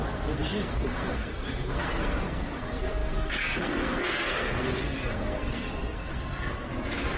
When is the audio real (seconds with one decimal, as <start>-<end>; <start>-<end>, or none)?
6.7-7.2